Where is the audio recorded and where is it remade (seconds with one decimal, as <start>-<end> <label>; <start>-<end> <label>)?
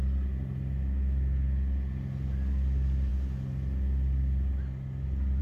0.0-5.4 recorded